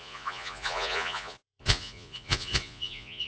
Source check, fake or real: fake